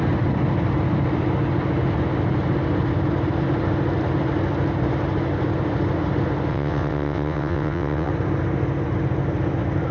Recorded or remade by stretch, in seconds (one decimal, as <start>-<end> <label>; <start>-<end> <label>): 0.0-6.5 recorded; 6.5-8.1 remade; 8.1-9.9 recorded